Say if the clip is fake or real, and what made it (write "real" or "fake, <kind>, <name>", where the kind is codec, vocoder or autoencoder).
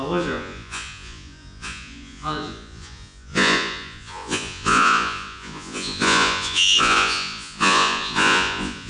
fake, vocoder, Vocos